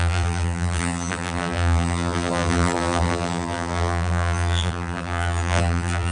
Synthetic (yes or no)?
yes